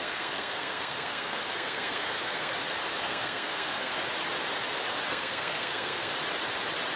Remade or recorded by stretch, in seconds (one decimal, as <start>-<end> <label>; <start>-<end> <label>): 0.0-2.5 remade; 2.5-3.0 recorded; 3.0-3.9 remade; 3.9-5.1 recorded; 5.1-6.1 remade; 6.1-7.0 recorded